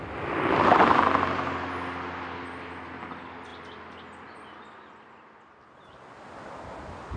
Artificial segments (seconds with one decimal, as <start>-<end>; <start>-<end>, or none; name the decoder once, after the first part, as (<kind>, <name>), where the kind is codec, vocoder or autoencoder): none

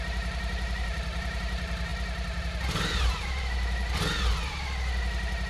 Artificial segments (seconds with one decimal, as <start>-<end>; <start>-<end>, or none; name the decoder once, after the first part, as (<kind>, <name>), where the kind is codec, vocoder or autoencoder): 0.0-1.9 (vocoder, BigVGAN v2); 2.4-3.8

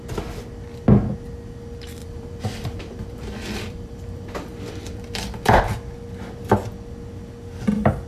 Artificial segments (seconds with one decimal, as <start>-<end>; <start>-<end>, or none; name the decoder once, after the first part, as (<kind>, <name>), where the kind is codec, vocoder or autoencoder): 2.0-5.6 (vocoder, BigVGAN v2)

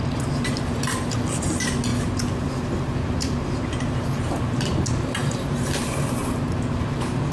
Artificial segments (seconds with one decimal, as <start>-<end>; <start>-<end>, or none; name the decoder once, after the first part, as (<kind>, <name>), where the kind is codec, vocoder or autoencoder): 1.9-3.9 (vocoder, BigVGAN v2); 5.2-5.8

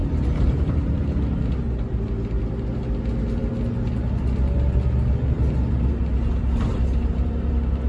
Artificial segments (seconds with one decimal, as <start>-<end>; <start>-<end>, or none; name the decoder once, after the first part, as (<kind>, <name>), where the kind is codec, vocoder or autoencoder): 0.0-1.0 (vocoder, BigVGAN v2); 6.7-7.5

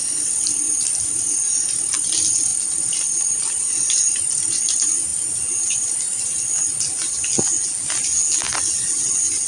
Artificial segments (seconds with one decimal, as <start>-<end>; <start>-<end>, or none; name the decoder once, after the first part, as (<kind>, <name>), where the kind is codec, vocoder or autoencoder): 2.5-3.5 (vocoder, BigVGAN v2)

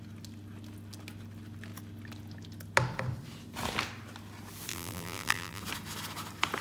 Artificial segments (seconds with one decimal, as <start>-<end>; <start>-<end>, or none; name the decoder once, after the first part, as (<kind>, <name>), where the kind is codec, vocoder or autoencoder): 4.7-5.6 (vocoder, BigVGAN v2)